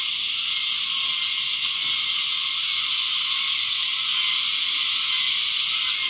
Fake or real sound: real